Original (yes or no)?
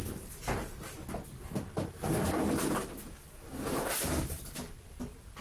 no